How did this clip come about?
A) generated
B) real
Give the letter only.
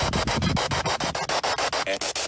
B